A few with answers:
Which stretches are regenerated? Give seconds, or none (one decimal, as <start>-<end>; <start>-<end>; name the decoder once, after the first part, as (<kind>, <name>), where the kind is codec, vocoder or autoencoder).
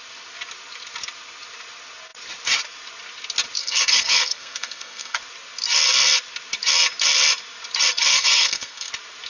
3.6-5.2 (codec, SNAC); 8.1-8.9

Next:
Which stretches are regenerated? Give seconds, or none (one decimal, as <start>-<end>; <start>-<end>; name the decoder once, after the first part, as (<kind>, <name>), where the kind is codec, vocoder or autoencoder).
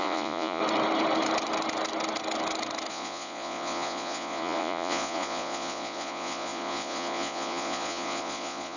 0.0-0.6 (vocoder, Vocos); 2.9-8.8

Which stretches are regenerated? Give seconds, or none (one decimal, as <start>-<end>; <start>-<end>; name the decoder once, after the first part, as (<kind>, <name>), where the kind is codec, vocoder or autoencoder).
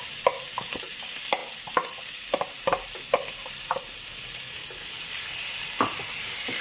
none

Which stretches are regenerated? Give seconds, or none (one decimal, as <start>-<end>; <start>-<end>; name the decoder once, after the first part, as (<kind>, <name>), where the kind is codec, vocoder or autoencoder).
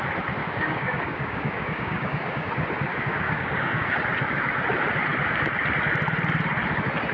0.4-2.5 (codec, DAC); 2.9-4.0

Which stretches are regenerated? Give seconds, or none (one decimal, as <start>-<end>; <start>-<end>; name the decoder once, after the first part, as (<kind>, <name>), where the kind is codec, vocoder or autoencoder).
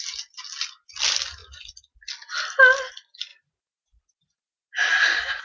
none